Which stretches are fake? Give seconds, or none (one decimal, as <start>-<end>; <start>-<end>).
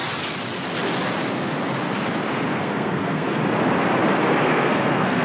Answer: 2.5-3.4; 4.2-5.2